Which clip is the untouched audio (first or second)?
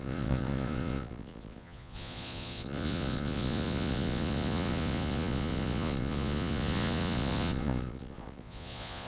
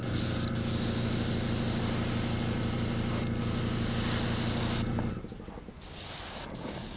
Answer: second